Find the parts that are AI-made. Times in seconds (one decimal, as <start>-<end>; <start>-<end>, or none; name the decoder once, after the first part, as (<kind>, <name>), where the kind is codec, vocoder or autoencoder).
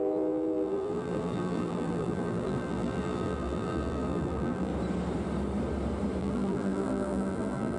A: 0.0-4.7 (vocoder, BigVGAN v2); 6.2-7.8